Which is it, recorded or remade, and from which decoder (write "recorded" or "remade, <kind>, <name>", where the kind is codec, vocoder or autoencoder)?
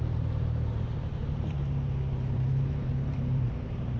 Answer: remade, vocoder, BigVGAN v2